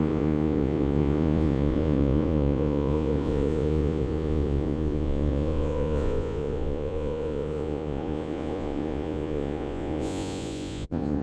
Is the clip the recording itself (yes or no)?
no